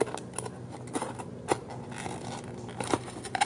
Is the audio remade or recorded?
recorded